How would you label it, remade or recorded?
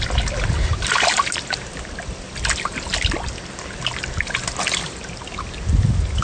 recorded